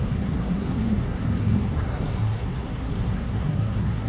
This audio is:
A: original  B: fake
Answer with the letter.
B